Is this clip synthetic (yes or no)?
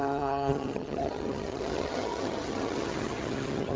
yes